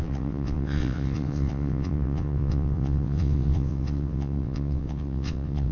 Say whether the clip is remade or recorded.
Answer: remade